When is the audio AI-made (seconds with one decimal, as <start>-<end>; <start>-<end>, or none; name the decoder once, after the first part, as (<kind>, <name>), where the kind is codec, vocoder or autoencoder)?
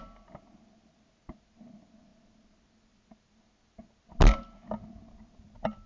none